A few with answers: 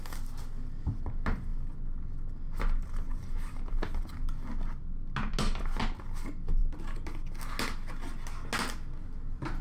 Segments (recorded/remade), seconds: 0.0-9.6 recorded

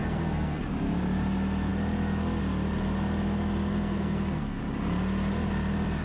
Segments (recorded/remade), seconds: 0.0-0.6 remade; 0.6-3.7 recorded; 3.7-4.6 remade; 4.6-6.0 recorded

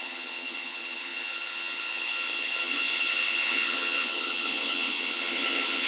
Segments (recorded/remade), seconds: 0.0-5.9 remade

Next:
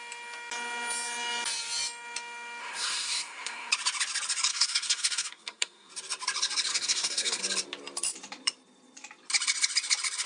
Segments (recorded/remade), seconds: 0.0-2.6 recorded; 2.6-3.7 remade; 3.7-4.5 recorded; 4.5-5.9 remade; 5.9-6.7 recorded; 6.7-7.4 remade; 7.4-10.3 recorded

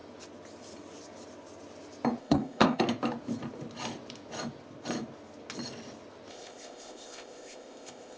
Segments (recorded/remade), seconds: 0.0-2.2 recorded; 2.2-2.8 remade; 2.8-6.3 recorded; 6.3-8.2 remade

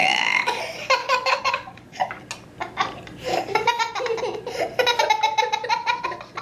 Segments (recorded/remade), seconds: 0.0-1.0 recorded; 1.0-2.2 remade; 2.2-3.3 recorded; 3.3-3.8 remade; 3.8-6.4 recorded

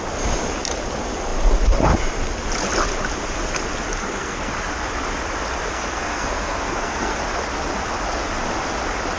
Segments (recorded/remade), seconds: 0.0-4.0 recorded; 4.0-4.5 remade; 4.5-5.7 recorded; 5.7-7.2 remade; 7.2-9.2 recorded

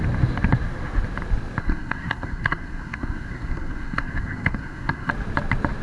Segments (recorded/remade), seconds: 0.0-1.6 recorded; 1.6-5.1 remade; 5.1-5.8 recorded